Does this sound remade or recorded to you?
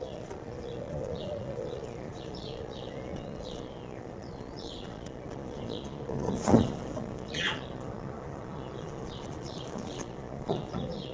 remade